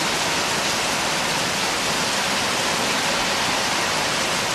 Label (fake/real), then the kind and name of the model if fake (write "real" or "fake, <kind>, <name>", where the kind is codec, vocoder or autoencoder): real